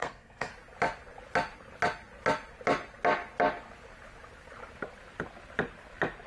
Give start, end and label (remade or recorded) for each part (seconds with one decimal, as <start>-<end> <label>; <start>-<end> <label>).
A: 0.0-0.5 remade; 0.5-6.3 recorded